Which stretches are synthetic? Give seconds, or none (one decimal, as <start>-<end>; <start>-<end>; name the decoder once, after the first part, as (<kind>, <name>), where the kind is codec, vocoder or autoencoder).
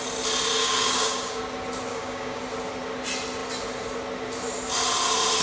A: 0.6-1.4 (codec, DAC); 1.9-2.4